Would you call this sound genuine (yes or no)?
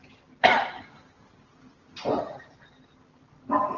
yes